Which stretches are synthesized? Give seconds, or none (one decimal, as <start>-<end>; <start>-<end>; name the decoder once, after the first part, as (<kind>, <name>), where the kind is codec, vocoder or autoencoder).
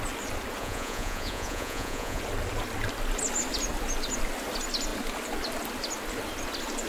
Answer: 0.6-2.2 (vocoder, Vocos)